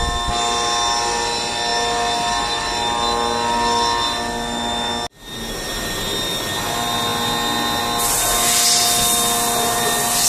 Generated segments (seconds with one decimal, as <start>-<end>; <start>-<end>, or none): none